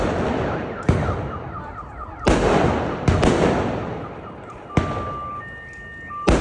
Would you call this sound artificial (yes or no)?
no